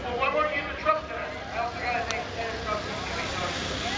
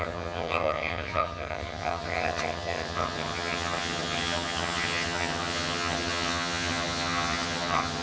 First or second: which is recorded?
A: first